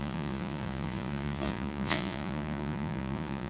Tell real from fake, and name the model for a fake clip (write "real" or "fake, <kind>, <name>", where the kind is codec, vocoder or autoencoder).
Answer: fake, vocoder, Vocos